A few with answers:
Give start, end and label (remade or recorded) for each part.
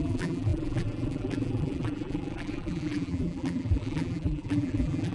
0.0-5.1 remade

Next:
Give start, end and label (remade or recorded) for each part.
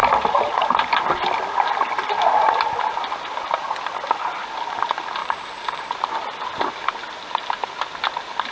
0.0-5.2 recorded; 5.2-5.9 remade; 5.9-8.5 recorded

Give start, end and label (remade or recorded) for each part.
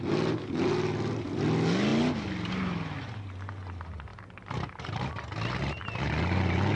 0.0-4.1 recorded; 4.1-5.1 remade; 5.1-6.8 recorded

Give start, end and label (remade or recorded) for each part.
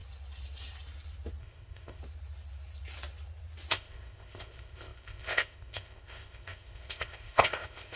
0.0-1.4 recorded; 1.4-2.0 remade; 2.0-3.7 recorded; 3.7-8.0 remade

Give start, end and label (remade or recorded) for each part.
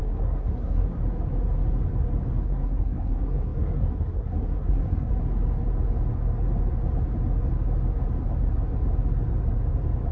0.0-1.0 remade; 1.0-2.4 recorded; 2.4-5.1 remade; 5.1-10.1 recorded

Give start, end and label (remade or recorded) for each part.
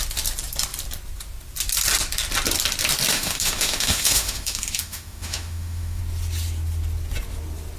0.0-3.1 recorded; 3.1-6.0 remade; 6.0-7.8 recorded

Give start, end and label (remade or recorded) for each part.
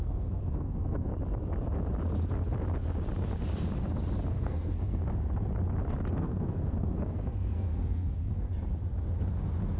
0.0-1.1 remade; 1.1-4.3 recorded; 4.3-5.0 remade; 5.0-6.1 recorded; 6.1-8.5 remade; 8.5-9.8 recorded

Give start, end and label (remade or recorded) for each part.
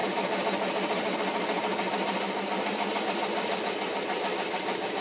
0.0-5.0 recorded